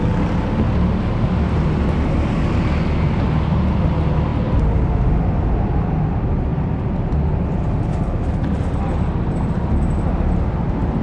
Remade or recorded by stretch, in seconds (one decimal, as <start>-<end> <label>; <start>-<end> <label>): 0.0-11.0 recorded